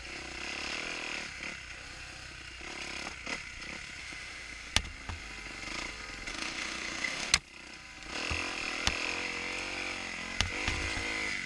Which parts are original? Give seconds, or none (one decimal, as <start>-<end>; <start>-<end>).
0.0-4.0; 4.7-6.3; 7.3-11.5